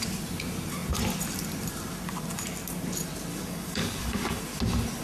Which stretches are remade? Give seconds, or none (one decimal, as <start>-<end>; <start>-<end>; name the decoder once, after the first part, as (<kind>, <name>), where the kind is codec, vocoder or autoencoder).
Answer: 3.3-4.4 (codec, DAC)